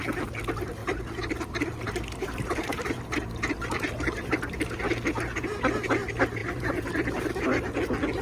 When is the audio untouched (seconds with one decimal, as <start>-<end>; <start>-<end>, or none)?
0.0-0.8; 4.8-6.4; 7.3-8.2